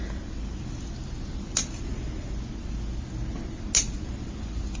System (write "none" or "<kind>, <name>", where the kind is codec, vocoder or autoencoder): none